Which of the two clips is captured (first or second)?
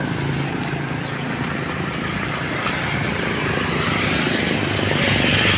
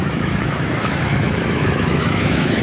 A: first